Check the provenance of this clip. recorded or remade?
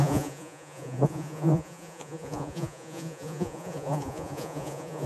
remade